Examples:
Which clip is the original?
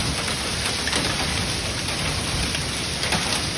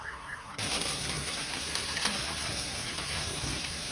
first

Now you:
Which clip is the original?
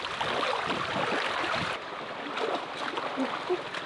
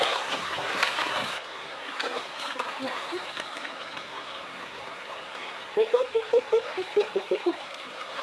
first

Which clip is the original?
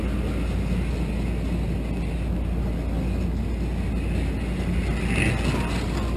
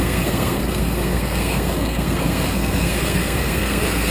first